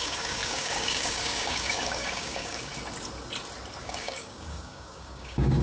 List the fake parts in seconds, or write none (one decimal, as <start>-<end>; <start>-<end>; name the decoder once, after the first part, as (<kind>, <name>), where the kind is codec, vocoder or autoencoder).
0.0-2.7 (codec, DAC); 3.8-5.6